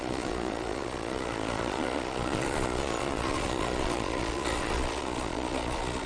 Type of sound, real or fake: fake